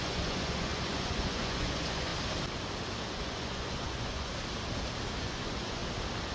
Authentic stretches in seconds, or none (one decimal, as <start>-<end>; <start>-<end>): 2.1-3.1; 4.3-5.2; 5.8-6.3